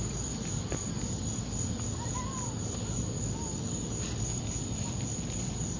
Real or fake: real